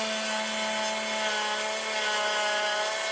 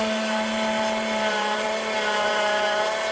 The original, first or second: first